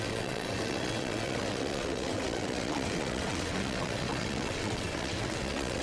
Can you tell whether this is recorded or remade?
remade